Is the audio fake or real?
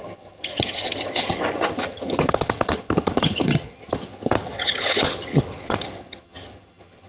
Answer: fake